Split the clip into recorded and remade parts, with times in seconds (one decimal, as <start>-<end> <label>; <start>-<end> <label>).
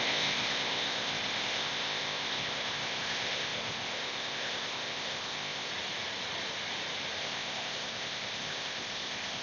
0.0-5.7 remade; 5.7-7.2 recorded; 7.2-9.4 remade